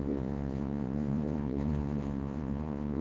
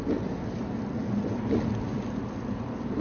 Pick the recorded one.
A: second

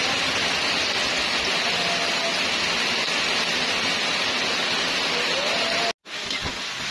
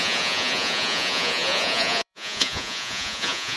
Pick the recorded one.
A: first